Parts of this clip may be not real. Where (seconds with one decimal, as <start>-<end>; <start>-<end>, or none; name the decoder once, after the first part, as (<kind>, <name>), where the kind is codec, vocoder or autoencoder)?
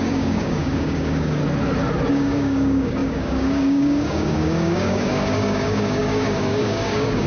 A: 0.0-1.4 (codec, DAC); 2.1-7.3